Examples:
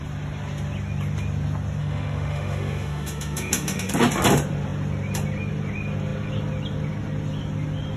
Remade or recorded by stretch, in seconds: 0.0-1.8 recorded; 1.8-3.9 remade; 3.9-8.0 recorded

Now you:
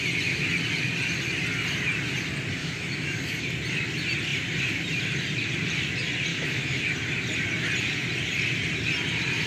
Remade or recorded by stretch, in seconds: 0.0-2.6 recorded; 2.6-3.4 remade; 3.4-6.3 recorded; 6.3-6.8 remade; 6.8-9.5 recorded

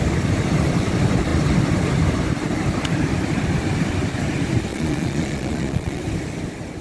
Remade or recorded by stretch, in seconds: 0.0-4.7 recorded; 4.7-6.0 remade; 6.0-6.8 recorded

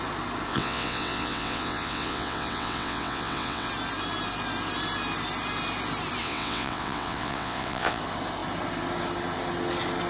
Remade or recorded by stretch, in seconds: 0.0-0.5 recorded; 0.5-3.7 remade; 3.7-6.2 recorded; 6.2-8.0 remade; 8.0-10.1 recorded

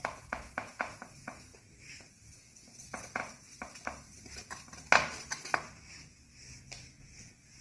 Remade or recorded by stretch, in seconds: 0.0-1.5 remade; 1.5-2.2 recorded; 2.2-3.2 remade; 3.2-7.0 recorded; 7.0-7.6 remade

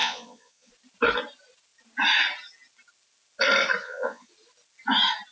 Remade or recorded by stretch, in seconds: 0.0-0.7 remade; 0.7-3.8 recorded; 3.8-4.3 remade; 4.3-5.3 recorded